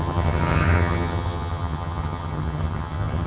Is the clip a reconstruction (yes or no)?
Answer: yes